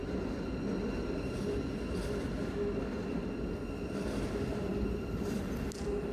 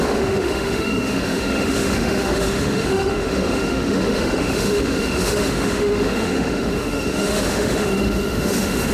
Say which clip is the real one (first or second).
first